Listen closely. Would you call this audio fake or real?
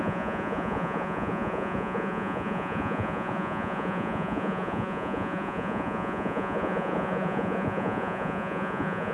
fake